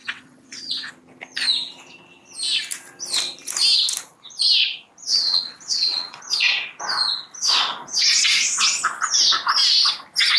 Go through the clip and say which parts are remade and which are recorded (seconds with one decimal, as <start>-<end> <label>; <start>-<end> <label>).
0.0-0.9 remade; 0.9-5.1 recorded; 5.1-6.2 remade; 6.2-10.4 recorded